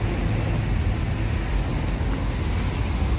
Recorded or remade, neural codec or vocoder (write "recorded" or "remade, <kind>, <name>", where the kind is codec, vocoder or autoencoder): recorded